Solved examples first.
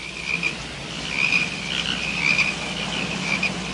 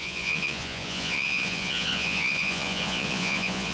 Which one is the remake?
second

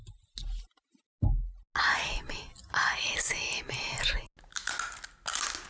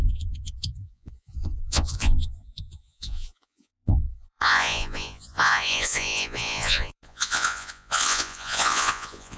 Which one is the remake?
second